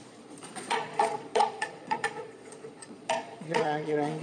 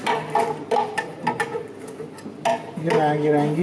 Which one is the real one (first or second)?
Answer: second